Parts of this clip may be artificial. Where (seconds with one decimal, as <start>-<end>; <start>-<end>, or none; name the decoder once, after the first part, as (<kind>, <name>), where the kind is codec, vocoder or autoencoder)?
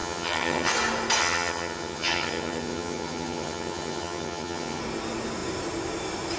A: 0.0-0.7 (vocoder, HiFi-GAN); 1.2-4.8